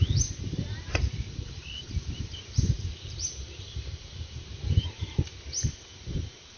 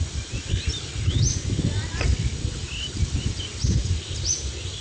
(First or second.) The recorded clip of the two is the second